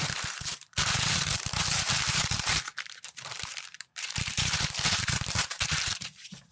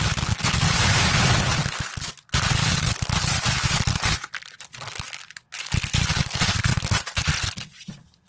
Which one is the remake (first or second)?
first